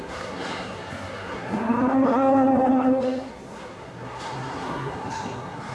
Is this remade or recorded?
remade